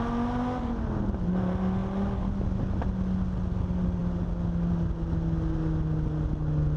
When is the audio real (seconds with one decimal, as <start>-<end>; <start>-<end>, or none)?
0.0-6.8